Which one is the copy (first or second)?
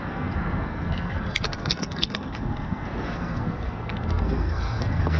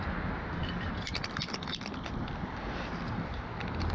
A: first